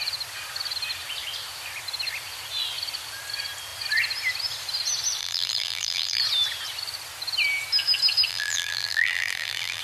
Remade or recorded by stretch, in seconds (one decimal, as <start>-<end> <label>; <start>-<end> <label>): 0.0-5.2 recorded; 5.2-6.2 remade; 6.2-8.3 recorded; 8.3-9.8 remade